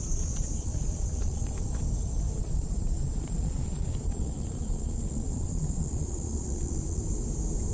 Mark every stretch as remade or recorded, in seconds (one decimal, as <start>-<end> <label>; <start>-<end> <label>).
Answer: 0.0-1.5 remade; 1.5-2.4 recorded; 2.4-7.0 remade; 7.0-7.7 recorded